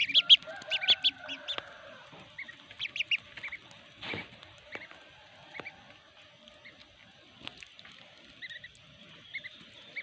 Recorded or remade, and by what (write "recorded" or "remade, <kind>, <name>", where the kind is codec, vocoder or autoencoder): recorded